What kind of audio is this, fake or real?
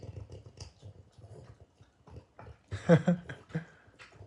real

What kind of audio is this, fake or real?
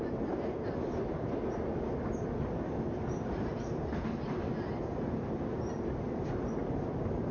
real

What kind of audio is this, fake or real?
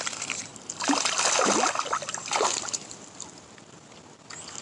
real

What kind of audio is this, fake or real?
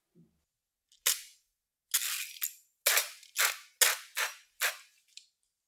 real